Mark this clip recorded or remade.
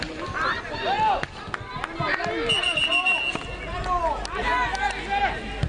recorded